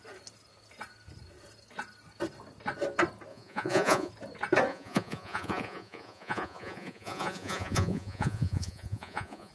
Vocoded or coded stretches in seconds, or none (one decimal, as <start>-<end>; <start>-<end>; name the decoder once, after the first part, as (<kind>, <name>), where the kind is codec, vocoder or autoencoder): 3.3-4.1 (vocoder, Vocos); 4.7-9.5